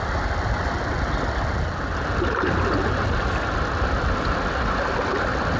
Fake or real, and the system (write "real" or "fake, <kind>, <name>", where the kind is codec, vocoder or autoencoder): real